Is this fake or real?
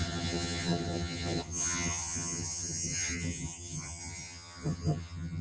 fake